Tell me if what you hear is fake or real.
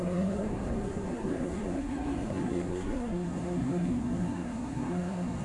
fake